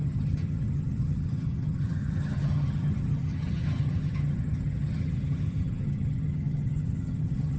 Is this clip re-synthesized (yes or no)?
yes